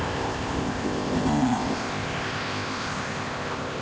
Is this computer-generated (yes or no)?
yes